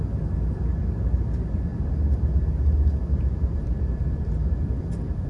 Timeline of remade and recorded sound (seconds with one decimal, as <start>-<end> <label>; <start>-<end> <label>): 0.0-5.3 recorded